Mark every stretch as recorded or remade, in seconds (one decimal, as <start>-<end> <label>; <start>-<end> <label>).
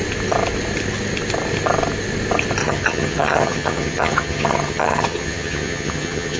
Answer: 0.0-2.6 recorded; 2.6-6.4 remade